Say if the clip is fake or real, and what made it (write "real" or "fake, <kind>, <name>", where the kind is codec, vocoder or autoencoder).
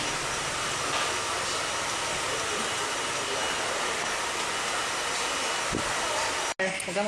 real